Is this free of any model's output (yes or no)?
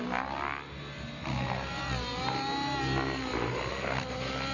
yes